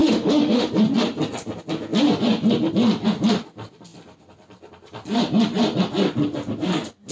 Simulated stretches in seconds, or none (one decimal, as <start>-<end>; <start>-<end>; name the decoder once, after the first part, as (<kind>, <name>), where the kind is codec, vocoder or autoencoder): 0.0-0.7 (autoencoder, DAC-VAE)